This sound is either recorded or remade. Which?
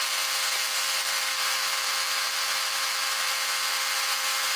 remade